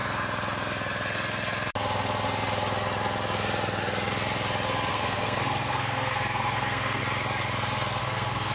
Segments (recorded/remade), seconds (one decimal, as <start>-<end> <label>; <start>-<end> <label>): 0.0-4.9 recorded; 4.9-7.0 remade; 7.0-8.0 recorded; 8.0-8.5 remade